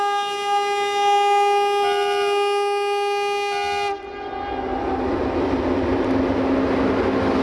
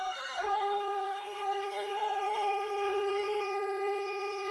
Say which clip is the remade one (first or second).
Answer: second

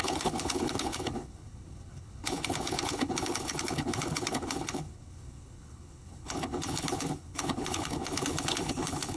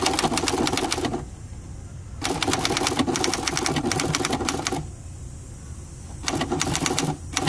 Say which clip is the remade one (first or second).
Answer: first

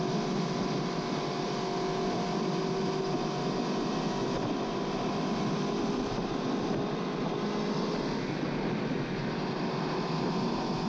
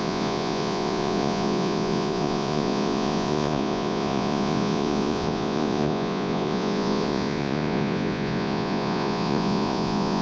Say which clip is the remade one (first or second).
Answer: second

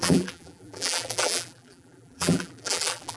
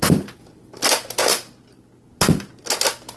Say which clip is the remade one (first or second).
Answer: first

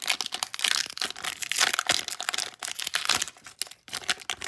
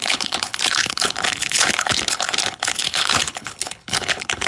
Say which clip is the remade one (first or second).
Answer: second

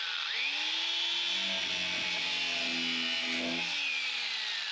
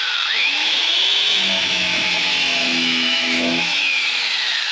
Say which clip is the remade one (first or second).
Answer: second